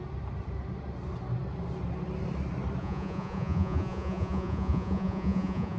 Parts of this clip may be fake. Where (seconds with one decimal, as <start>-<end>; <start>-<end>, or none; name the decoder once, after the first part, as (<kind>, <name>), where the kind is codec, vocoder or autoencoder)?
2.8-5.8 (vocoder, Vocos)